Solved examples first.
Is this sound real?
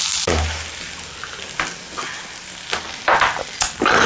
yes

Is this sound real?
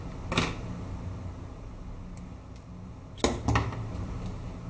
yes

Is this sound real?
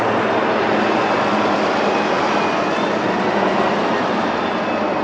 yes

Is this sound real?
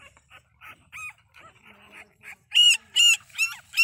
no